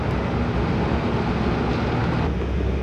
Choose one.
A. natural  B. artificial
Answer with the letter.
A